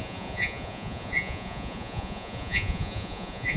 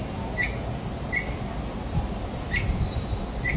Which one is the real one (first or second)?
second